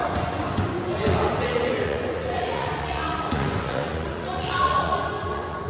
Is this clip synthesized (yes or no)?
yes